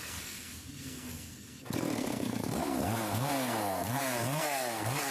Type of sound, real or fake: fake